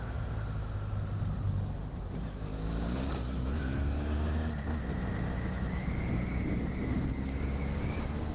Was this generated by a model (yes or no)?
no